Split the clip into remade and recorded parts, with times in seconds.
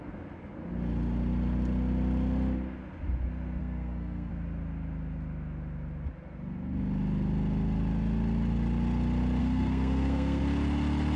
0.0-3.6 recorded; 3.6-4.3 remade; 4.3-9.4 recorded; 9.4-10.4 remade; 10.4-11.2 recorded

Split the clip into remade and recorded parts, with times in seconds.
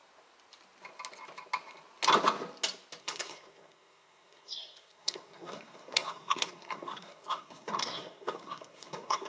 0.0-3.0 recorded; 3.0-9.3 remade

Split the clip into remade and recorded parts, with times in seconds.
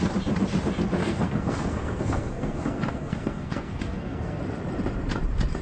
0.0-1.0 recorded; 1.0-4.4 remade; 4.4-5.6 recorded